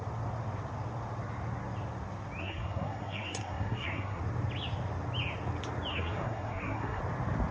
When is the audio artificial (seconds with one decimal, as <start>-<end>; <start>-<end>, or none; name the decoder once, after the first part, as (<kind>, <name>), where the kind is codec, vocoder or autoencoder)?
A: 2.4-4.2 (codec, SNAC); 5.9-7.0

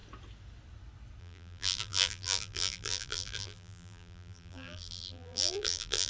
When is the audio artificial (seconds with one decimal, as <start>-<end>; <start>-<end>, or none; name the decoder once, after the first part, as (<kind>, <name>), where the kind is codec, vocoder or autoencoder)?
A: 1.2-6.1 (vocoder, BigVGAN v2)

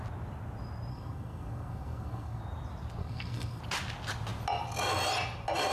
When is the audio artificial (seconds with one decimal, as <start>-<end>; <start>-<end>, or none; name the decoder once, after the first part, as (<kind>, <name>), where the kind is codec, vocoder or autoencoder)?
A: 0.9-2.4 (codec, SNAC); 3.0-3.6

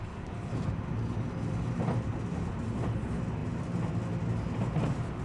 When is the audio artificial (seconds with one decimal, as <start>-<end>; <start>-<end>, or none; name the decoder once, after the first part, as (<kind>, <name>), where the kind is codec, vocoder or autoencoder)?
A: none

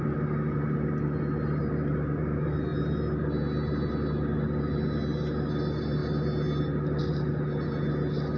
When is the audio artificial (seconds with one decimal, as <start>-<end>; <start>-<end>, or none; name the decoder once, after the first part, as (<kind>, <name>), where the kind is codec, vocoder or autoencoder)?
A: none

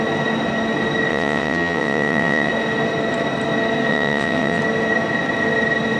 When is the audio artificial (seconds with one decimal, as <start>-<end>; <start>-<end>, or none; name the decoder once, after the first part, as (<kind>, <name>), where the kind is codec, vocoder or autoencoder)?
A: 1.1-2.5 (vocoder, WaveNeXt); 3.9-4.6

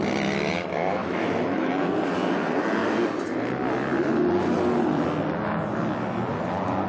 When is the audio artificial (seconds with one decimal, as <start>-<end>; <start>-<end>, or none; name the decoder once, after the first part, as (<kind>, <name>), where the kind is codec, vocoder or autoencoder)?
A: 1.0-1.7 (autoencoder, DAC-VAE)